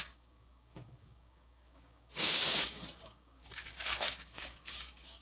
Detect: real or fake fake